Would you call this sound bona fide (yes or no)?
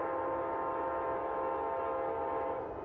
yes